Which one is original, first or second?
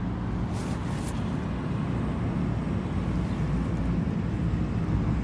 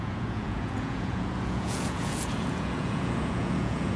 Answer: first